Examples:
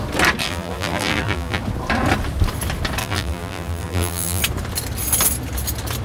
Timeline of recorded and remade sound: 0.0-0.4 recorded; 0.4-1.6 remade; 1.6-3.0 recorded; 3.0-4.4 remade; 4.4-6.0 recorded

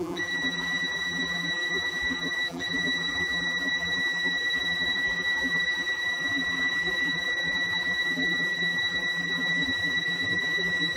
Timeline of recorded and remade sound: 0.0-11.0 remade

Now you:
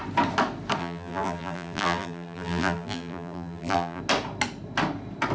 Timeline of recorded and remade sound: 0.0-0.8 recorded; 0.8-4.0 remade; 4.0-5.3 recorded

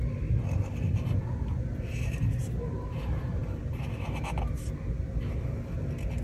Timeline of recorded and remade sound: 0.0-6.2 recorded